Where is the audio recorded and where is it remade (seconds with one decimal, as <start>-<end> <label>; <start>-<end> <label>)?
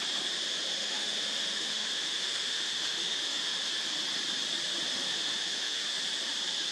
0.0-0.8 recorded; 0.8-3.7 remade; 3.7-4.9 recorded; 4.9-5.8 remade; 5.8-6.7 recorded